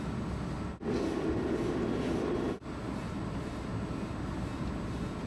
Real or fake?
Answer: real